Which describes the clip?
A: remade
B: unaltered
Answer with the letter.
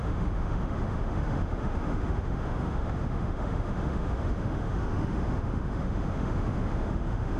A